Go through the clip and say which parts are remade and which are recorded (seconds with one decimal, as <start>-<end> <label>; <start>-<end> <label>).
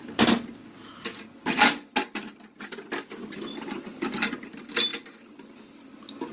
0.0-6.3 recorded